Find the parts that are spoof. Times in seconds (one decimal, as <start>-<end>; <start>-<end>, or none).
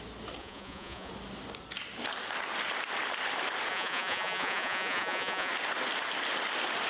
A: 0.4-1.1; 3.7-5.5